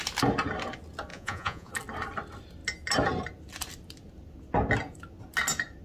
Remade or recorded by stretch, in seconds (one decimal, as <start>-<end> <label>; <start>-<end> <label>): 0.0-1.1 recorded; 1.1-1.7 remade; 1.7-5.8 recorded